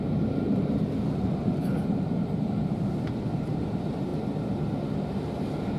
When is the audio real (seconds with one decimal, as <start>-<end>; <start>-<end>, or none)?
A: 1.6-2.2; 4.1-5.1